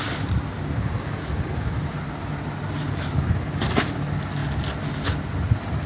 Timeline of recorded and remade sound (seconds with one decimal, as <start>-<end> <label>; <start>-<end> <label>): 0.0-5.9 recorded